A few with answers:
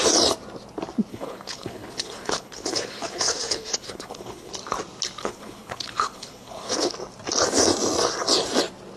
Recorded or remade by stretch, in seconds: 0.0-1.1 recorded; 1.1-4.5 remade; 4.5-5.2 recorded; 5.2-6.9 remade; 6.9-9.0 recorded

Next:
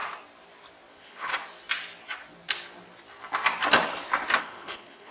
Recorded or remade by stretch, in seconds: 0.0-0.9 recorded; 0.9-1.3 remade; 1.3-4.4 recorded; 4.4-5.1 remade

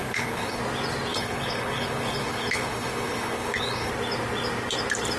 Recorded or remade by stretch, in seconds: 0.0-0.6 remade; 0.6-1.1 recorded; 1.1-3.9 remade; 3.9-5.2 recorded